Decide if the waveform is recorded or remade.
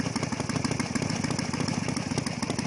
recorded